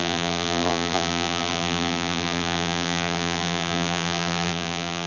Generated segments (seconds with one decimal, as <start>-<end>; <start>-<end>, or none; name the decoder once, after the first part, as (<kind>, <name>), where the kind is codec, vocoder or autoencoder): 0.0-5.1 (vocoder, BigVGAN v2)